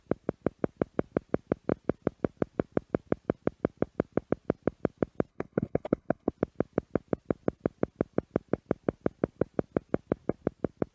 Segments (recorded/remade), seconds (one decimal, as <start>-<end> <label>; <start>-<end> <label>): 0.0-5.3 recorded; 5.3-6.3 remade; 6.3-10.9 recorded